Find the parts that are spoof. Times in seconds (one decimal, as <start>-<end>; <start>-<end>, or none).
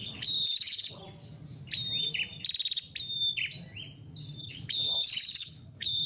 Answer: 0.0-1.0; 4.4-6.1